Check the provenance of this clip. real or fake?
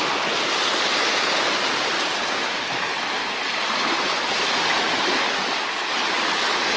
real